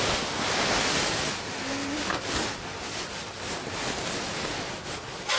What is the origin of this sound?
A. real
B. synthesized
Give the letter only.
A